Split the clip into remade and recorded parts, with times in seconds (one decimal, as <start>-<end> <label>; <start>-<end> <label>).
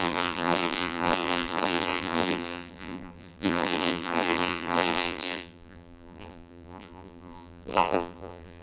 0.0-8.6 remade